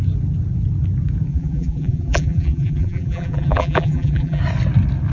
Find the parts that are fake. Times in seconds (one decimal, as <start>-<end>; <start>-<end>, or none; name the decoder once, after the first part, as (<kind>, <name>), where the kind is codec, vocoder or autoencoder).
1.3-4.4 (vocoder, BigVGAN v2)